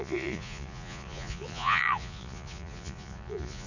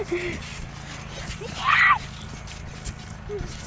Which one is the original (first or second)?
second